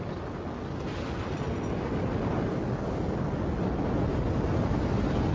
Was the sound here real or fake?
real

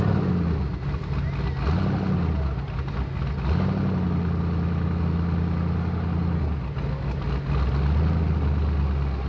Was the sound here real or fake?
real